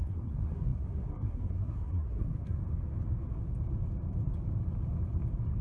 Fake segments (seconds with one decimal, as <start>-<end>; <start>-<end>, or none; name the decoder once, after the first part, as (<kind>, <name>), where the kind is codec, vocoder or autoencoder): 0.0-2.6 (codec, SNAC)